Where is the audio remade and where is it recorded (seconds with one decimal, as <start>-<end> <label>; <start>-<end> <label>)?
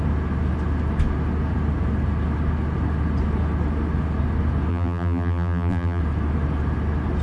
0.0-4.7 recorded; 4.7-6.0 remade; 6.0-7.2 recorded